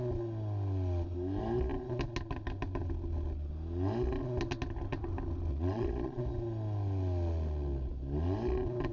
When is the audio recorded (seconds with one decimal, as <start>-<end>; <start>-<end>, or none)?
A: 0.0-5.5; 6.2-8.9